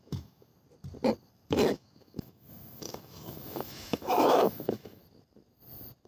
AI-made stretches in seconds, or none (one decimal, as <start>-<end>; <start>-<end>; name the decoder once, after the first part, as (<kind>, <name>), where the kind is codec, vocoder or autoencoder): 0.0-0.5 (autoencoder, DAC-VAE); 1.5-5.0